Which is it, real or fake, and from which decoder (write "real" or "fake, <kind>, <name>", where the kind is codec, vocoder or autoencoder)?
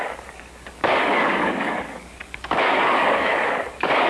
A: fake, codec, DAC